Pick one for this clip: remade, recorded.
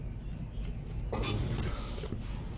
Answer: recorded